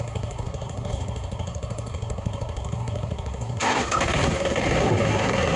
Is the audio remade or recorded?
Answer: remade